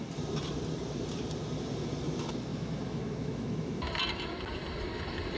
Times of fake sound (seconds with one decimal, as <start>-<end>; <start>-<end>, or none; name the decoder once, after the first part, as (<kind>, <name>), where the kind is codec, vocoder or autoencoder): 2.5-3.8 (autoencoder, DAC-VAE)